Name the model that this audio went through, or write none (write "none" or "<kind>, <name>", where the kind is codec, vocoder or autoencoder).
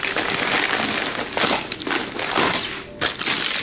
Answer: none